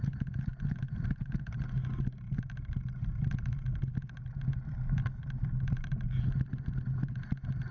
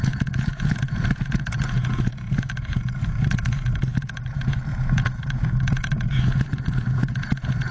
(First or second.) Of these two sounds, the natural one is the first